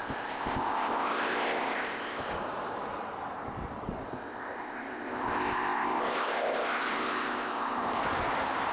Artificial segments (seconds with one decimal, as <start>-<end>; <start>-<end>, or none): 0.0-2.3; 4.1-8.0